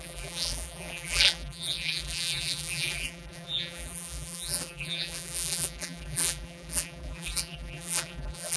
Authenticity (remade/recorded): remade